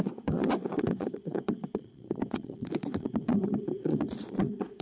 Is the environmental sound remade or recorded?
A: remade